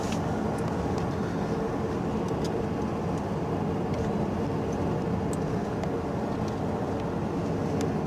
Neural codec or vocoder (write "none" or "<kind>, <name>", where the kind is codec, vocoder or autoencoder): none